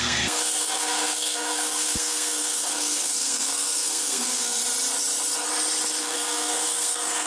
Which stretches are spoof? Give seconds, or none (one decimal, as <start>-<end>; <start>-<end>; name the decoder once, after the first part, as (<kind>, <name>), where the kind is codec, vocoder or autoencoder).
0.0-4.6 (codec, SNAC); 6.0-7.3